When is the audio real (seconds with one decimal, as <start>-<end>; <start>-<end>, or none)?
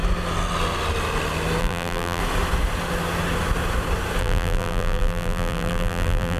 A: 0.0-1.6; 2.2-4.2